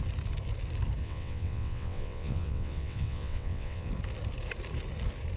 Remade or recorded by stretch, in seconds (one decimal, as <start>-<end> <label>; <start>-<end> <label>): 0.0-1.0 recorded; 1.0-3.9 remade; 3.9-5.4 recorded